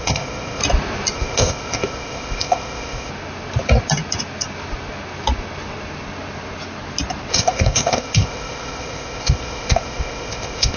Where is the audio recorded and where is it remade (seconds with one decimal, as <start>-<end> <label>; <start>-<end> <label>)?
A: 0.0-0.6 remade; 0.6-1.1 recorded; 1.1-3.1 remade; 3.1-7.3 recorded; 7.3-10.8 remade